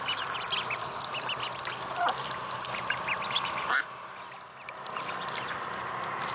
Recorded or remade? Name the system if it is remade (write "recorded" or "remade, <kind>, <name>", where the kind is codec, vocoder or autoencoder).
recorded